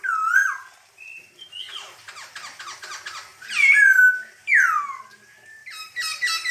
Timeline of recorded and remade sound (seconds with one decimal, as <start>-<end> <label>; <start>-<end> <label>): 0.0-0.4 recorded; 0.4-1.5 remade; 1.5-3.3 recorded; 3.3-4.0 remade; 4.0-5.6 recorded; 5.6-6.5 remade